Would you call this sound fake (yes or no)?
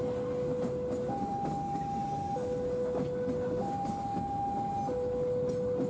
no